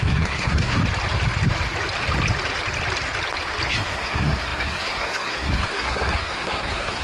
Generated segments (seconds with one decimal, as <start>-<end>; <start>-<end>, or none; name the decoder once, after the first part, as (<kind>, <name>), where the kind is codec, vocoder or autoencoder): 0.0-0.8 (codec, SNAC); 3.7-7.0